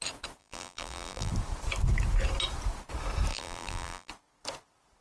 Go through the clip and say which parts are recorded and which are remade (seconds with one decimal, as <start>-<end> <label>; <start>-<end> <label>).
0.0-0.4 recorded; 0.4-1.3 remade; 1.3-3.3 recorded; 3.3-4.1 remade; 4.1-5.0 recorded